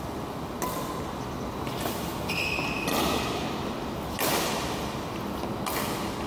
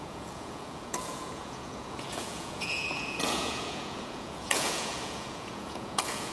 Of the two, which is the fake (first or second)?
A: second